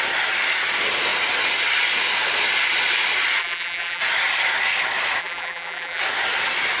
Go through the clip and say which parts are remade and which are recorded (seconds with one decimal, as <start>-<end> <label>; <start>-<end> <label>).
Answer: 0.0-3.4 recorded; 3.4-4.0 remade; 4.0-5.2 recorded; 5.2-6.0 remade; 6.0-6.8 recorded

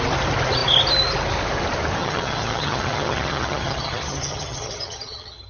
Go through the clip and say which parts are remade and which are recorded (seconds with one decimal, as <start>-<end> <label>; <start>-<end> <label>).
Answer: 0.0-2.0 recorded; 2.0-5.5 remade

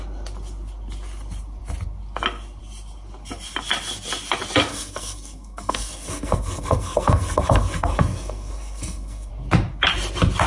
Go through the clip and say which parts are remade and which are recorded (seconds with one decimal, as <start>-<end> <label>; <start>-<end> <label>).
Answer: 0.0-4.7 recorded; 4.7-9.3 remade; 9.3-10.5 recorded

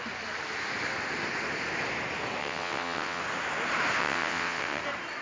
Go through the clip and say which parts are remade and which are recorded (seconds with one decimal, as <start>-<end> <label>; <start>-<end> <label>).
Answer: 0.0-2.4 recorded; 2.4-3.2 remade; 3.2-4.0 recorded; 4.0-4.8 remade; 4.8-5.2 recorded